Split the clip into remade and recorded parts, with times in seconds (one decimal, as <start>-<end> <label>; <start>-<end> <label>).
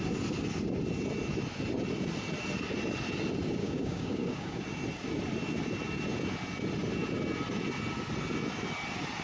0.0-3.6 recorded; 3.6-4.6 remade; 4.6-9.2 recorded